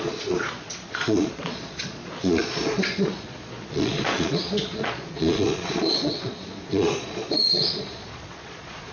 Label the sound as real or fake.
fake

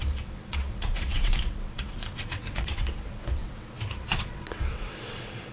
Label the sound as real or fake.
fake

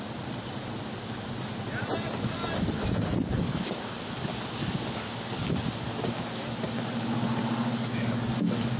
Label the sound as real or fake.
real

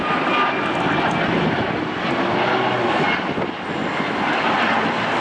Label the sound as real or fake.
real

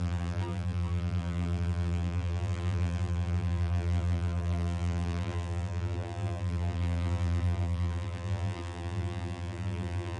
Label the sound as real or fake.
fake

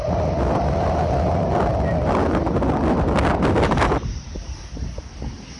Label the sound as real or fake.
real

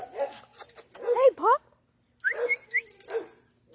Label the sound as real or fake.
real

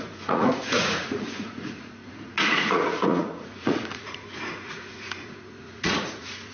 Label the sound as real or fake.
fake